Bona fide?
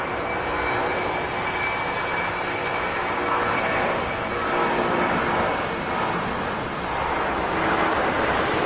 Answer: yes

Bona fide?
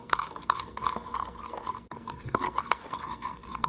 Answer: no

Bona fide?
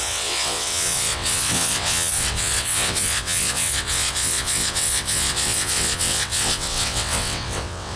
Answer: no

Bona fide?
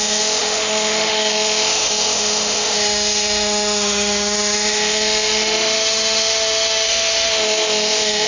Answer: no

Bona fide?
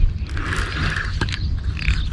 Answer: yes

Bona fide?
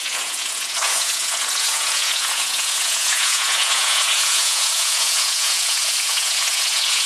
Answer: no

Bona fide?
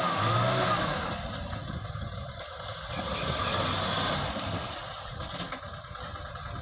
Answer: yes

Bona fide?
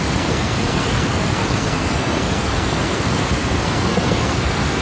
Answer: no